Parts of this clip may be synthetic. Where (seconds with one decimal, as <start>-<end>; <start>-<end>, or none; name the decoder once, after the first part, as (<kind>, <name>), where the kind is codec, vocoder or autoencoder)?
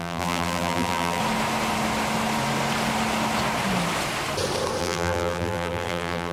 0.0-1.2 (vocoder, BigVGAN v2); 4.8-6.3